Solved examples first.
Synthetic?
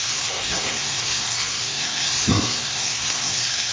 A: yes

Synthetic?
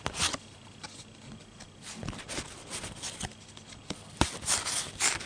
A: no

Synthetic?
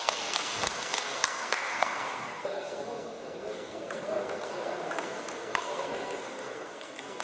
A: yes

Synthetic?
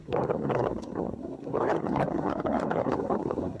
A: yes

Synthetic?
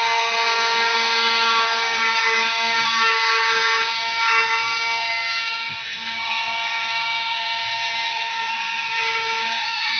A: yes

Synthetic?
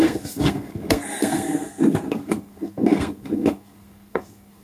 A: yes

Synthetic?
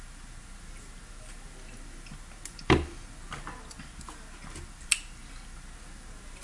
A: no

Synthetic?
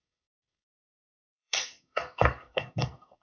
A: yes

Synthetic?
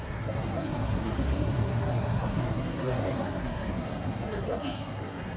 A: yes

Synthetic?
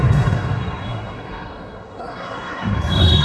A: yes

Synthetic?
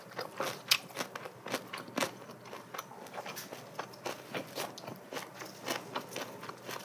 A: no